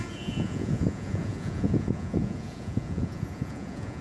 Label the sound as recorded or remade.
remade